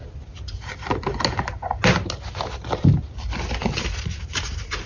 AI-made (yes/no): no